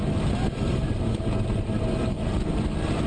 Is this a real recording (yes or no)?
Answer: yes